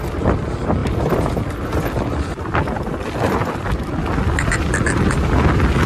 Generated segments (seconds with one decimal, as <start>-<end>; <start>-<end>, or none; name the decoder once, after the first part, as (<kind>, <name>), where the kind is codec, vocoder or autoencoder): none